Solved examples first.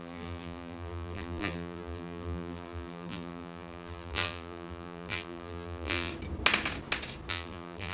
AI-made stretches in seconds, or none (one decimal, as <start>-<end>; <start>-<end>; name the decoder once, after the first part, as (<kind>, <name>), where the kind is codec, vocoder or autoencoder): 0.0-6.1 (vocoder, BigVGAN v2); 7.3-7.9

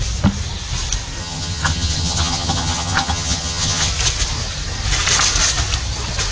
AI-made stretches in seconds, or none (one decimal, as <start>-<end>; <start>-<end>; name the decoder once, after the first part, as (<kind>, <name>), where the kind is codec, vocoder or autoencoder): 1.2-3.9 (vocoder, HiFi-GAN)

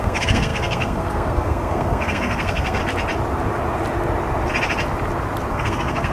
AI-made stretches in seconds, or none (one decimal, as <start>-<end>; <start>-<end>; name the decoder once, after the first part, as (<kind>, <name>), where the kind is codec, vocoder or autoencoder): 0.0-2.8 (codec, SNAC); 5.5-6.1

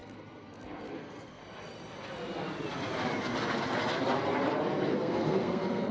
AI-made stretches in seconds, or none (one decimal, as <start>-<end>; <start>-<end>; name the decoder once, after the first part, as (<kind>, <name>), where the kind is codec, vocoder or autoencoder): 0.0-1.4 (codec, SNAC); 4.9-5.9